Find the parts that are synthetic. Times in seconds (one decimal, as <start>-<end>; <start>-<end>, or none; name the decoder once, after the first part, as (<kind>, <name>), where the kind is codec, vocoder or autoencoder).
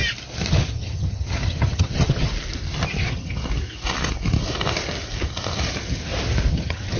0.5-2.3 (vocoder, HiFi-GAN); 3.0-3.4; 6.5-7.0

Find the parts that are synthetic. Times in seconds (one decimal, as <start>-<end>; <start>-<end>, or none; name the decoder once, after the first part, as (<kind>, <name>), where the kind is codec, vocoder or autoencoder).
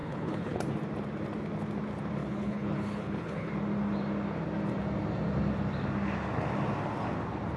0.0-0.6 (codec, HILCodec); 2.2-3.5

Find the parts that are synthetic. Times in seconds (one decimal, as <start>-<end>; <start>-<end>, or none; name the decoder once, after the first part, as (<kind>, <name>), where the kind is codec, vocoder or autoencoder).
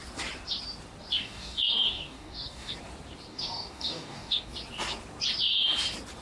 1.2-2.7 (codec, DAC); 3.3-4.5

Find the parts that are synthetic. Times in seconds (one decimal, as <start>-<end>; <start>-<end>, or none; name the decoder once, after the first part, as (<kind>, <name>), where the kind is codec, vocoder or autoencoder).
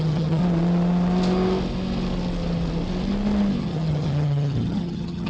0.0-0.4 (vocoder, HiFi-GAN); 3.6-5.3